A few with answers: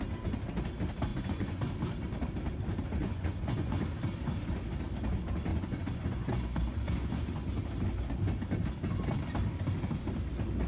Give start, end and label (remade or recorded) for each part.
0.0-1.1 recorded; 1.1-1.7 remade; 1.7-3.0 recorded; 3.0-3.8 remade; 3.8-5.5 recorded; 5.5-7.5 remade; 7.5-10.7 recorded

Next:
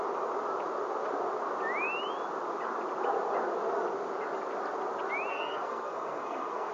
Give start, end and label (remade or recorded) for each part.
0.0-5.3 recorded; 5.3-6.7 remade

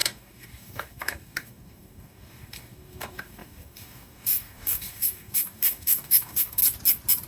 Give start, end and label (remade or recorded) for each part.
0.0-6.6 remade; 6.6-7.3 recorded